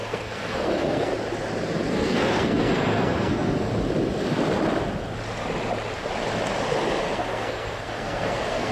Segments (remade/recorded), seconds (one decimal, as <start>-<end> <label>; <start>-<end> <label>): 0.0-1.1 remade; 1.1-1.9 recorded; 1.9-3.7 remade; 3.7-7.0 recorded; 7.0-8.7 remade